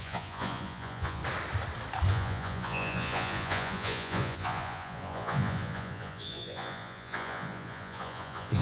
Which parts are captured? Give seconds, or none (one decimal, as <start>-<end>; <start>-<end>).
1.2-2.1